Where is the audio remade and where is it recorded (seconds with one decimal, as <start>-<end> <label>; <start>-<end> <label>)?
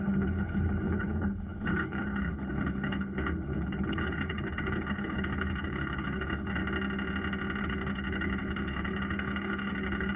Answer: 0.0-6.6 remade; 6.6-7.6 recorded; 7.6-10.2 remade